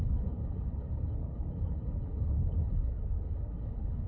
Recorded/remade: remade